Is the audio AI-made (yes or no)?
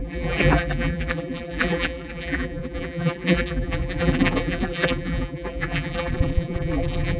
yes